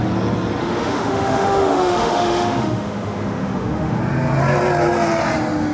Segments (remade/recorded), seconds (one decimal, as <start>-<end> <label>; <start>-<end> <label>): 0.0-0.6 recorded; 0.6-4.0 remade; 4.0-5.7 recorded